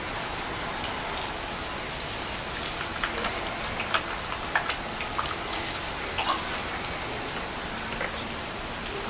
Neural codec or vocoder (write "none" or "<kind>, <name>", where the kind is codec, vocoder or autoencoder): none